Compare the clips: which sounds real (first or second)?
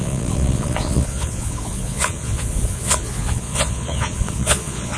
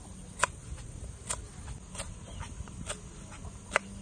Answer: second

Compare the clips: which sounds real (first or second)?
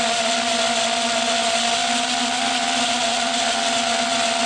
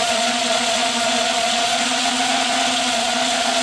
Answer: first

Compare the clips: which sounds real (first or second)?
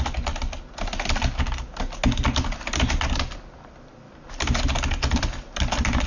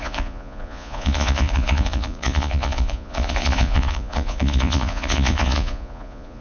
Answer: first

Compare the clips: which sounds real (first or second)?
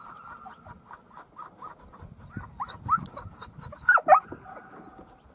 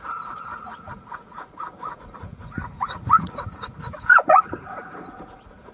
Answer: first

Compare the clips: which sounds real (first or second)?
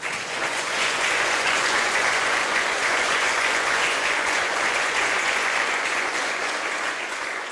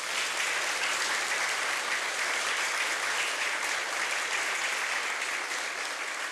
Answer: second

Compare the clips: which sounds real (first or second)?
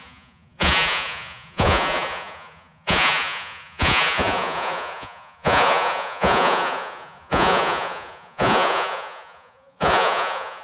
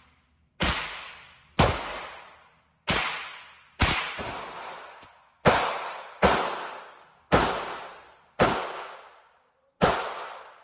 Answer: second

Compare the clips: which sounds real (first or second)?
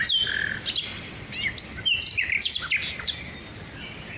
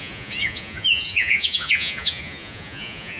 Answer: first